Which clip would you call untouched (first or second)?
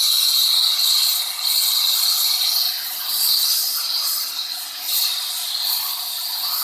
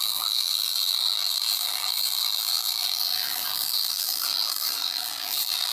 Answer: first